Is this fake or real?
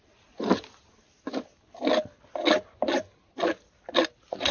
real